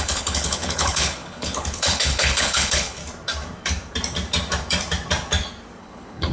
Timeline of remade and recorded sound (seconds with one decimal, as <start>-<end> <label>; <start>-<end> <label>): 0.0-3.0 remade; 3.0-5.8 recorded; 5.8-6.3 remade